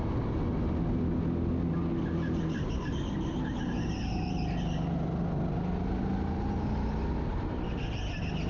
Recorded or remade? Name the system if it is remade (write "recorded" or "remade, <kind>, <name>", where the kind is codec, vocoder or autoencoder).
recorded